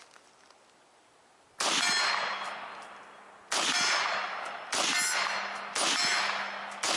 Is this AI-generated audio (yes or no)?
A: no